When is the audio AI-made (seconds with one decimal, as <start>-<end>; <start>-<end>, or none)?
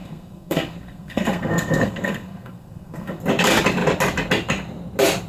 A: 0.0-3.2